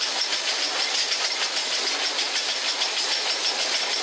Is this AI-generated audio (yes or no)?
no